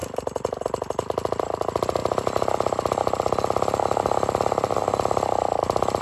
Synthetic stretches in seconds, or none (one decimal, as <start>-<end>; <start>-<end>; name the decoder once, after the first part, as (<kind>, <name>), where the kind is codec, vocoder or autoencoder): none